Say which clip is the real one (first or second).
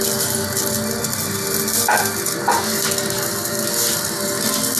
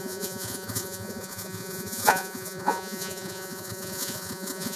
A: first